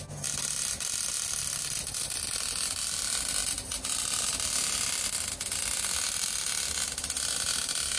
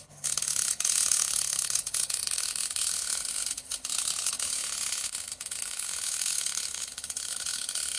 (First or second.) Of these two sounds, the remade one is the second